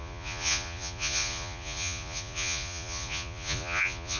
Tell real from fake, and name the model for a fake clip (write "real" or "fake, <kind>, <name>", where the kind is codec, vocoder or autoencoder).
fake, vocoder, Vocos